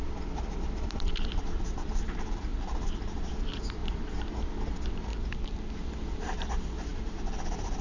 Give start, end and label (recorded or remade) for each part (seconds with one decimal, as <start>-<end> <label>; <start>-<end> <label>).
0.0-2.5 recorded; 2.5-3.3 remade; 3.3-3.8 recorded; 3.8-4.5 remade; 4.5-5.1 recorded; 5.1-5.7 remade; 5.7-6.9 recorded; 6.9-7.8 remade